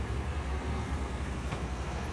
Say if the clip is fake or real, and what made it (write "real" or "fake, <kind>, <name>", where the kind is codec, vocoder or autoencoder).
fake, codec, SNAC